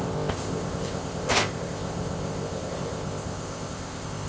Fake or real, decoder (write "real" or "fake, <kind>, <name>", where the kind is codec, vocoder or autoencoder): fake, codec, ZipCodec